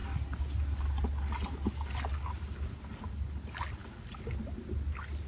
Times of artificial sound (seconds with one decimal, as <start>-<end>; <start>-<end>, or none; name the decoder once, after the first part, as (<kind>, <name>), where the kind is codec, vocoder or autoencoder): none